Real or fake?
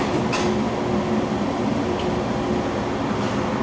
real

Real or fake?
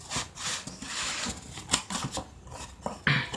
real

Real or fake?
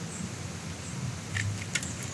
real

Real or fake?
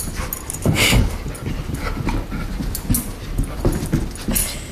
real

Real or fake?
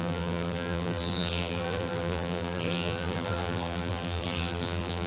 fake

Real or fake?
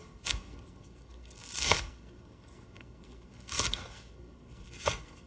fake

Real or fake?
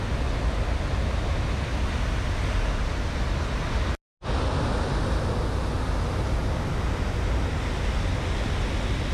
real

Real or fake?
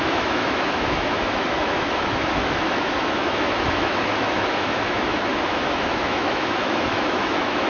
fake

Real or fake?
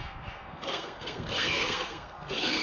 fake